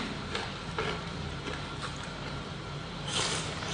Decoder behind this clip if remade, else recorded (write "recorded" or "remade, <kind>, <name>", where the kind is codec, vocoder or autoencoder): recorded